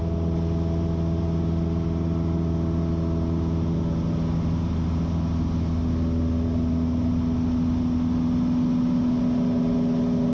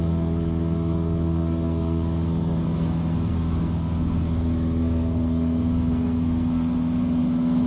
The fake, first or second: second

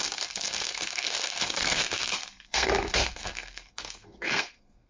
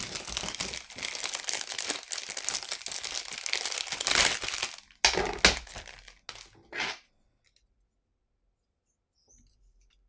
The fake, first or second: first